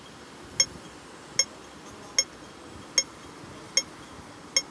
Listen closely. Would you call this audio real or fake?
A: real